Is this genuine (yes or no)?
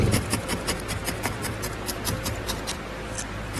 yes